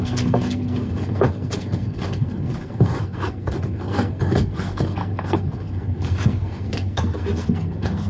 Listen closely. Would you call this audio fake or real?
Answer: fake